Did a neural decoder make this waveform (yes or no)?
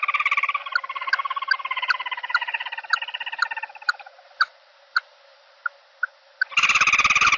no